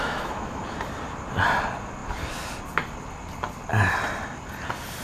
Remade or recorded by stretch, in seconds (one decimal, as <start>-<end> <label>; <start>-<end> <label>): 0.0-0.6 remade; 0.6-5.0 recorded